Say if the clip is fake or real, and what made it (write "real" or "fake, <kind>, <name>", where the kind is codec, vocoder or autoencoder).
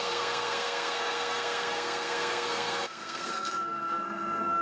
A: fake, codec, SNAC